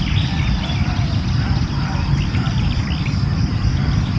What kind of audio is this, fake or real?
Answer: real